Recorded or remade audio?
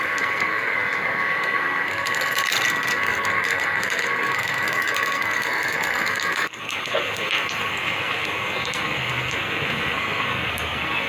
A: remade